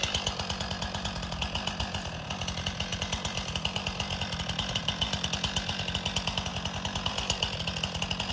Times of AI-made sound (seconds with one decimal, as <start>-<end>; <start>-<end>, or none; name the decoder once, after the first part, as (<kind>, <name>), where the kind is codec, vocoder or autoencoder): 2.9-4.8 (vocoder, BigVGAN v2); 6.5-8.3